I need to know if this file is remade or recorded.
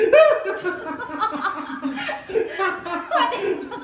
recorded